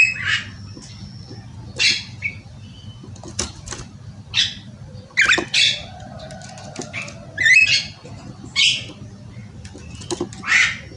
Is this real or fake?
real